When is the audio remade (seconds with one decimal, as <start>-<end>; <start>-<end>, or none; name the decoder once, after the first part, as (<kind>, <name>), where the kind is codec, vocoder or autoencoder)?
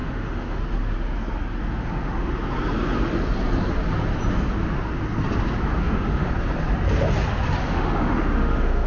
0.0-0.6 (autoencoder, DAC-VAE); 1.8-2.3; 5.7-6.3; 7.6-8.9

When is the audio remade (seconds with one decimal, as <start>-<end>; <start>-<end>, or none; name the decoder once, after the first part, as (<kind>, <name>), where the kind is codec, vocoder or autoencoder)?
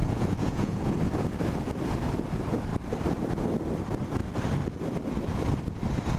0.0-1.0 (vocoder, Vocos)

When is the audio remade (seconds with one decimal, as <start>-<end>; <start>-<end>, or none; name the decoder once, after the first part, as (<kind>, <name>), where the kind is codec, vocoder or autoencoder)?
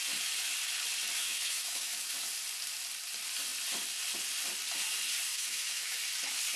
1.2-2.1 (autoencoder, DAC-VAE); 5.3-6.0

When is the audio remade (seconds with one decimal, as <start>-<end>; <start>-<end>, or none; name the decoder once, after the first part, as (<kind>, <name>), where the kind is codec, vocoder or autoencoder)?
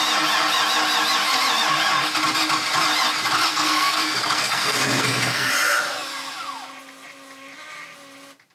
3.5-5.5 (codec, SNAC)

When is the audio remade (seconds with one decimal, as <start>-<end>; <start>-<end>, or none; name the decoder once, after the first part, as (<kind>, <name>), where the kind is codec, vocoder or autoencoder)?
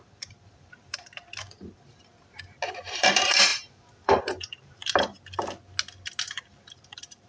0.0-2.1 (vocoder, BigVGAN v2); 2.8-4.8; 6.3-7.3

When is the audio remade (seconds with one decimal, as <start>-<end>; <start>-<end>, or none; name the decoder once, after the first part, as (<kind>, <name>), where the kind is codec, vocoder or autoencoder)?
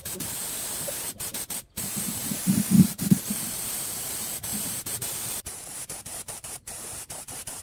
0.0-7.6 (vocoder, BigVGAN v2)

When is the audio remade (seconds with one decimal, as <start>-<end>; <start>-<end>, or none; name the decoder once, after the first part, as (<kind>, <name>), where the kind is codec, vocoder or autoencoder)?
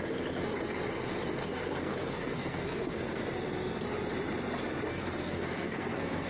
1.4-3.2 (codec, SNAC); 4.9-6.3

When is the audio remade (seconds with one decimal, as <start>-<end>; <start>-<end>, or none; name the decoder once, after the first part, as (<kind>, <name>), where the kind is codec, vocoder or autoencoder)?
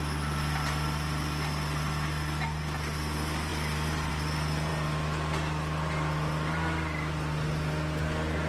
none